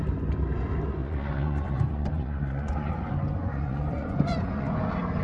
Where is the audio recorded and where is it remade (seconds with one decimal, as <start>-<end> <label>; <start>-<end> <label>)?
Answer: 0.0-1.0 recorded; 1.0-3.0 remade; 3.0-3.4 recorded; 3.4-4.8 remade; 4.8-5.2 recorded